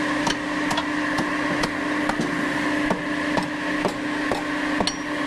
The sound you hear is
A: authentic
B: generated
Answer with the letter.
A